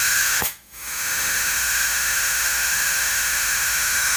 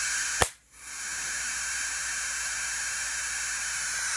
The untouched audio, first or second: second